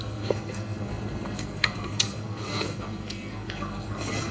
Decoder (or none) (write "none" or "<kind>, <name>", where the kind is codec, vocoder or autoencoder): codec, SNAC